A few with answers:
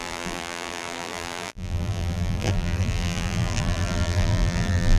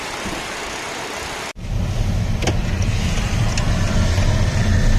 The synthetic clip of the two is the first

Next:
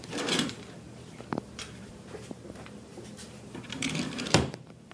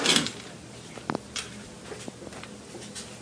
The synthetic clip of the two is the first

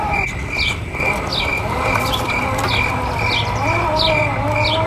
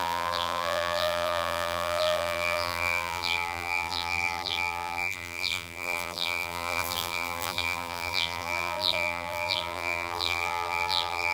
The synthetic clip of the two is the second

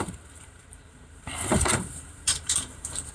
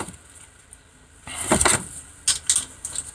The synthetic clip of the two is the first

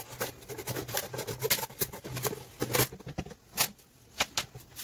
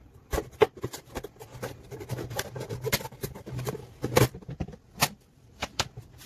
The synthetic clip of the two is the second